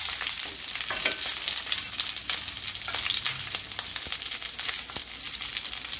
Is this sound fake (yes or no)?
no